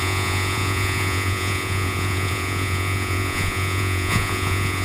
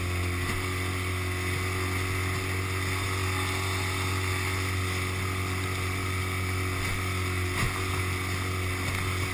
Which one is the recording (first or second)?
second